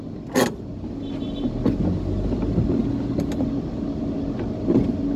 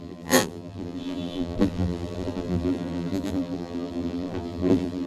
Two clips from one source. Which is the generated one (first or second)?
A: second